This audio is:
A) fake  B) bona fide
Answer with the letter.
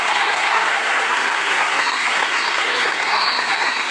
A